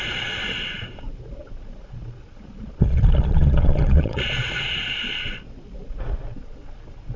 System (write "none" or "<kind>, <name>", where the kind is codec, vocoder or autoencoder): vocoder, Vocos